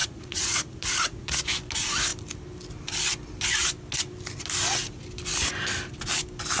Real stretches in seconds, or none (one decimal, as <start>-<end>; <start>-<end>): 1.4-6.6